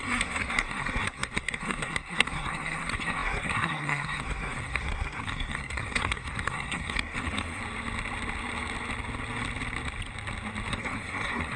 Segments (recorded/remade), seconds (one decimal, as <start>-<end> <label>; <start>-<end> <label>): 0.0-7.6 remade; 7.6-10.7 recorded; 10.7-11.6 remade